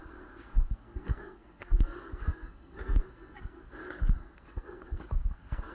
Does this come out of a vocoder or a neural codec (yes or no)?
yes